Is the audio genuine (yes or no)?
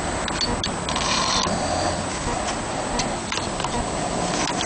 yes